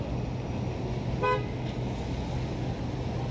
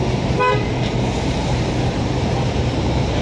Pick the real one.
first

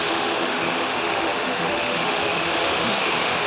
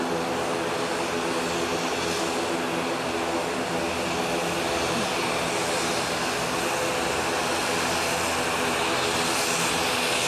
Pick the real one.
second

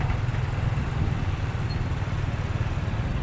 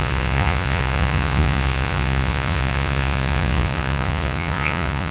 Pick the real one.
first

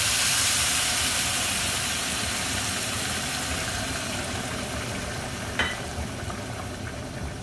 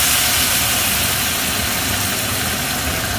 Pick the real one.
second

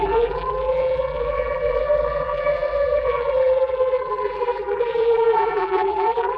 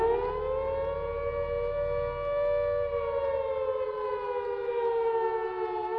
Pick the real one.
second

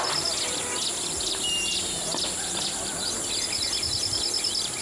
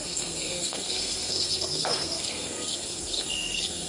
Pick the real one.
first